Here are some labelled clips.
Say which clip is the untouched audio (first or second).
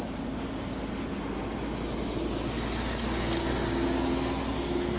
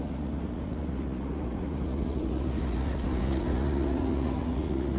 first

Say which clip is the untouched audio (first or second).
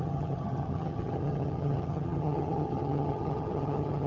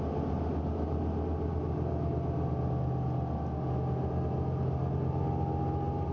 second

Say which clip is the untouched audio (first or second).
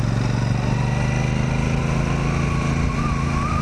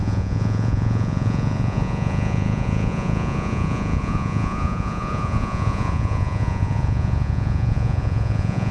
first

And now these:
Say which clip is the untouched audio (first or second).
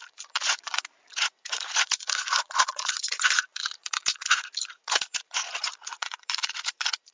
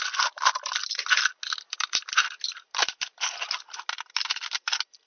second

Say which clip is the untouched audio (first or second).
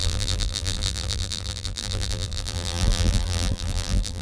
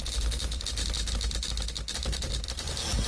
second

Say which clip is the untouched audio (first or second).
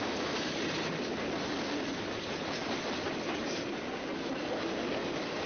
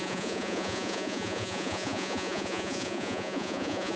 first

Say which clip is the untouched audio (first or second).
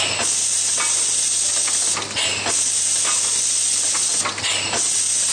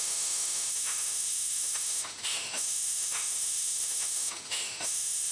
first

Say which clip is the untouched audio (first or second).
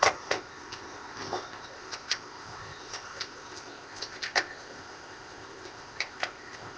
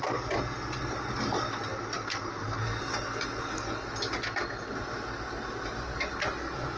second